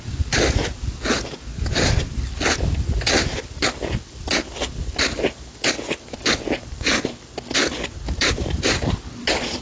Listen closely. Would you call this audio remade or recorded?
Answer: recorded